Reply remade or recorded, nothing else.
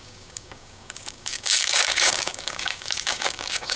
remade